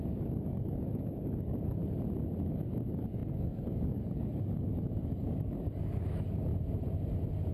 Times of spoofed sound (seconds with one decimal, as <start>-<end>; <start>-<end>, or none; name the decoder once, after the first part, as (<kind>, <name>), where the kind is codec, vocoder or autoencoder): 0.0-1.8 (codec, DAC); 2.4-6.5